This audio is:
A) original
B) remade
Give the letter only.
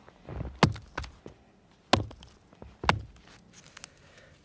A